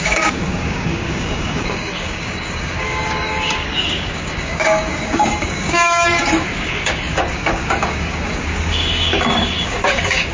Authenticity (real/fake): fake